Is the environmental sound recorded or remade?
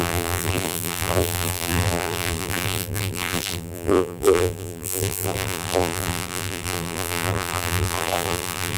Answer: remade